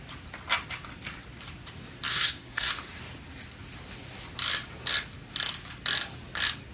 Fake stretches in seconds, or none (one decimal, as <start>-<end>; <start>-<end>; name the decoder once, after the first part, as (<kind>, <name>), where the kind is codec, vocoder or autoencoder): 2.1-2.7 (codec, SNAC)